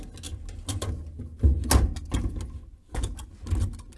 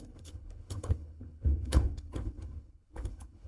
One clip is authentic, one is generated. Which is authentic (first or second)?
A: first